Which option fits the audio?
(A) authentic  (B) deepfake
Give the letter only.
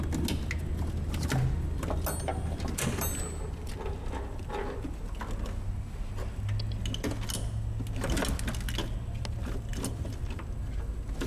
A